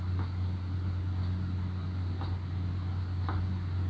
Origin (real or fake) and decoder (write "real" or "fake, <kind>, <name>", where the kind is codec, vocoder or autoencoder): real